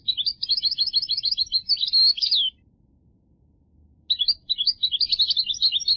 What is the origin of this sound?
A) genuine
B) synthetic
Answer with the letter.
A